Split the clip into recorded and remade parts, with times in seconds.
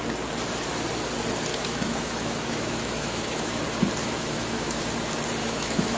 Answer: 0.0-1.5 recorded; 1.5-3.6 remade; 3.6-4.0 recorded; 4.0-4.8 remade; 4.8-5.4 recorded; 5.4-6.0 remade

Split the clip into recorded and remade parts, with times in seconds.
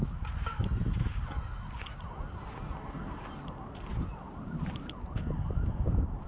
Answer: 0.0-6.3 recorded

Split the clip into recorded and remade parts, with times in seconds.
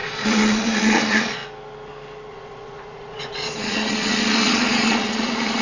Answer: 0.0-1.4 remade; 1.4-2.3 recorded; 2.3-5.6 remade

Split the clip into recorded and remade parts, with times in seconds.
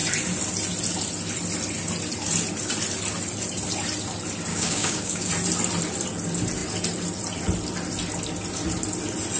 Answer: 0.0-4.5 recorded; 4.5-5.3 remade; 5.3-9.4 recorded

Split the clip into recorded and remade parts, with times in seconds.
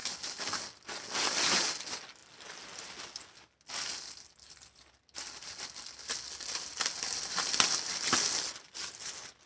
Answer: 0.0-9.5 recorded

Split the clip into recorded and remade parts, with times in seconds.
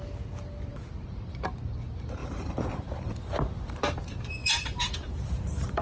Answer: 0.0-0.7 recorded; 0.7-1.4 remade; 1.4-2.2 recorded; 2.2-3.8 remade; 3.8-4.4 recorded; 4.4-5.8 remade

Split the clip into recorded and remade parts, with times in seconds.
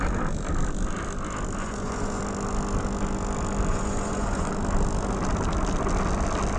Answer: 0.0-1.6 recorded; 1.6-2.2 remade; 2.2-3.7 recorded; 3.7-4.5 remade; 4.5-6.6 recorded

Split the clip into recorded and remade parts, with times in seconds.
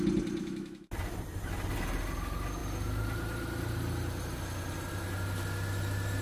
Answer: 0.0-0.4 recorded; 0.4-0.9 remade; 0.9-6.2 recorded